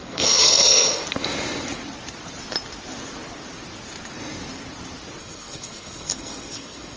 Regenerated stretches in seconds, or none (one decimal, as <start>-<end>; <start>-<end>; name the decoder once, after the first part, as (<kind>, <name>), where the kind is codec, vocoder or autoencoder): 0.0-1.0 (codec, SNAC); 5.2-7.0